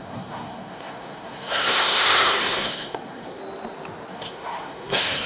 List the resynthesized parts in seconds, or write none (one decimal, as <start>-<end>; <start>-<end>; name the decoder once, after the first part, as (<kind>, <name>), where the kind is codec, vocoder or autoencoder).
0.0-3.4 (codec, SNAC); 4.1-5.3